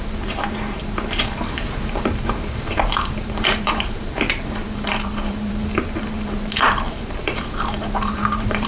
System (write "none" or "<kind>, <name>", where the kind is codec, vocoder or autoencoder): vocoder, BigVGAN v2